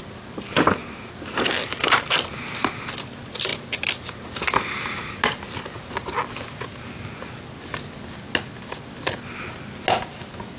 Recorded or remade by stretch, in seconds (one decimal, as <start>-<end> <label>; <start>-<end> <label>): 0.0-10.6 recorded